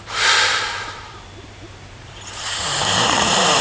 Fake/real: fake